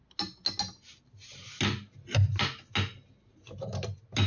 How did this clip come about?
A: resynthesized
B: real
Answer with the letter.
B